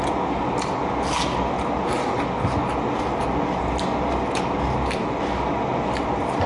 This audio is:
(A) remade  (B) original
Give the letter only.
B